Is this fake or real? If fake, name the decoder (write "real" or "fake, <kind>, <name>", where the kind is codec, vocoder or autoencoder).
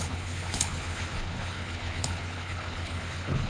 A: fake, codec, HILCodec